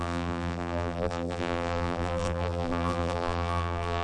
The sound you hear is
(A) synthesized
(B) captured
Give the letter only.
A